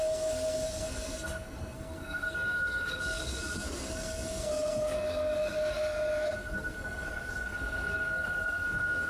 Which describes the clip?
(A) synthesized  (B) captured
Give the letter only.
A